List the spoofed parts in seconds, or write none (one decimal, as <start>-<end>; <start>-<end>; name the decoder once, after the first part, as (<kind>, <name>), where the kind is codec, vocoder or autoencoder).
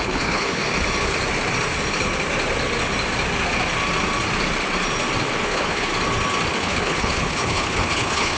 0.0-0.6 (codec, HILCodec); 5.4-5.9; 6.6-8.4